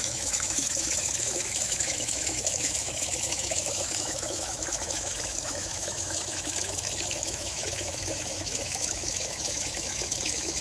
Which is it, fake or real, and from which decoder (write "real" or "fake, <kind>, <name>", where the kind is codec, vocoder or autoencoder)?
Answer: fake, autoencoder, DAC-VAE